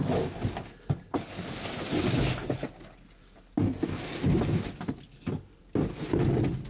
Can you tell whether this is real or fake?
real